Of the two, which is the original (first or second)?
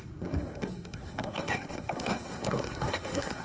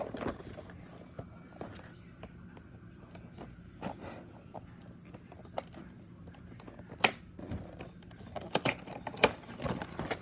second